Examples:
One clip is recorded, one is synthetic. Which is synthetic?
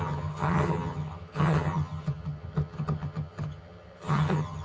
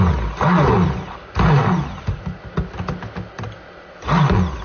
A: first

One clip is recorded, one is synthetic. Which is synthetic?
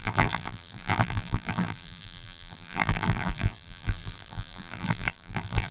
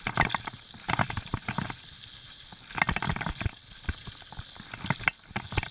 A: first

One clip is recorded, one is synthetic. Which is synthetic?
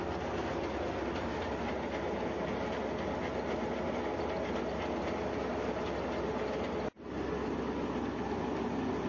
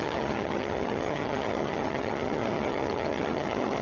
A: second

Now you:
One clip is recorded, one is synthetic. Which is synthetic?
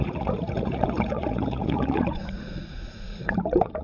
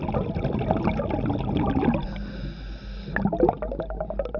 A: first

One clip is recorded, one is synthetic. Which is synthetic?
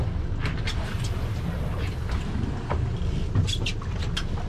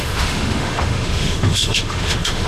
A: second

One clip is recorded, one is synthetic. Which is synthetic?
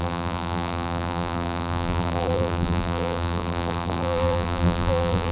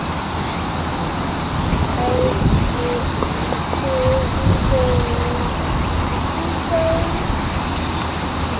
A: first